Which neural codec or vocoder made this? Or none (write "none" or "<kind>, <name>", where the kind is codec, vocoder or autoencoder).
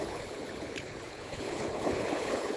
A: codec, HILCodec